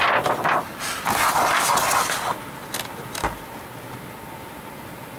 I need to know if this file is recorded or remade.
recorded